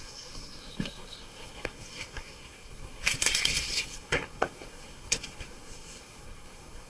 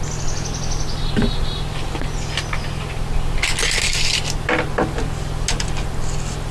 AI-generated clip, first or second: first